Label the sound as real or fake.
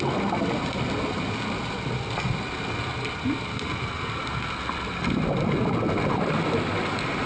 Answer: real